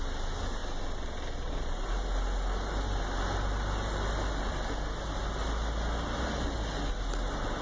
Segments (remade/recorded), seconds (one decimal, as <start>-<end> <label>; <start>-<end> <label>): 0.0-7.6 recorded